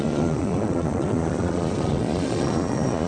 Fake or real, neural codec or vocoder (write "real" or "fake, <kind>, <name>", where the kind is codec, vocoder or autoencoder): fake, vocoder, Vocos